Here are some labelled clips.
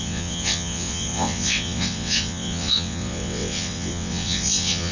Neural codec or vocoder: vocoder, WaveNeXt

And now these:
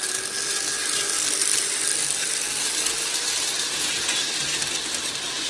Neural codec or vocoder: none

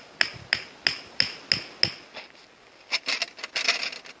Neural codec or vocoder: none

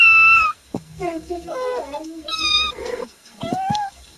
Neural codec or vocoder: codec, SNAC